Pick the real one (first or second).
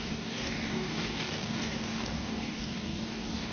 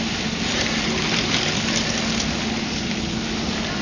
second